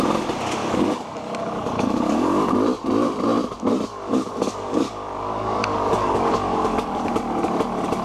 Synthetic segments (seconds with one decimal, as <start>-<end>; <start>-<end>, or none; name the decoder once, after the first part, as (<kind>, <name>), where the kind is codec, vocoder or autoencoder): 0.6-2.5 (codec, DAC); 3.9-7.1

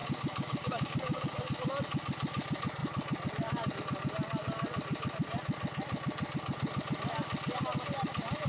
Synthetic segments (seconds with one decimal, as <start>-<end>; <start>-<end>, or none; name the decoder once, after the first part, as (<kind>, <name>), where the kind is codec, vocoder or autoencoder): 0.0-1.4 (codec, DAC)

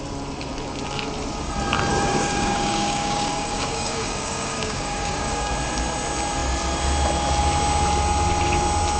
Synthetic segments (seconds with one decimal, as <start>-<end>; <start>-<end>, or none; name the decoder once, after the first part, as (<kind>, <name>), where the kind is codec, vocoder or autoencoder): 1.9-5.5 (codec, DAC)

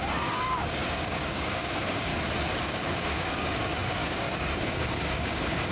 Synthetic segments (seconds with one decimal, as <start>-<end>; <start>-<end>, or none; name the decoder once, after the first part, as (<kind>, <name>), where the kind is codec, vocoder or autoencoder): 0.0-2.1 (codec, DAC); 2.6-5.7